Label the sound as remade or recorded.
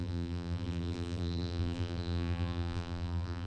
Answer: remade